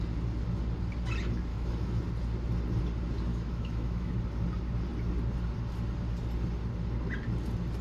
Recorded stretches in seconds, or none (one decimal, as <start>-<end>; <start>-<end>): 0.0-1.5; 2.0-3.3; 4.1-7.8